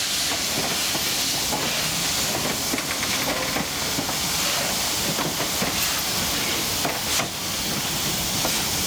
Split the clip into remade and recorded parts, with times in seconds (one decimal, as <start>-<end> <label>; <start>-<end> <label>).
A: 0.0-8.9 recorded